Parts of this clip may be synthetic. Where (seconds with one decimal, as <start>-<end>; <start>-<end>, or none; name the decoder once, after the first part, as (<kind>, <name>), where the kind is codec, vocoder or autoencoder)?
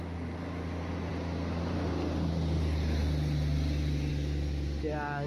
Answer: none